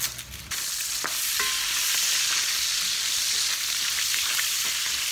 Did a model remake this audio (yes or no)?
no